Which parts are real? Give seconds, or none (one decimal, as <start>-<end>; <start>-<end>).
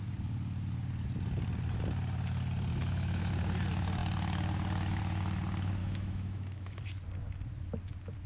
0.0-2.7; 3.3-5.8; 6.8-8.3